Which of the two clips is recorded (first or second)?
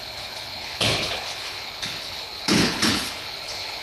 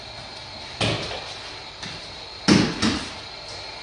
second